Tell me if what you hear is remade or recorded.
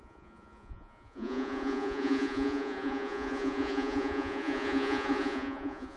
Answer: remade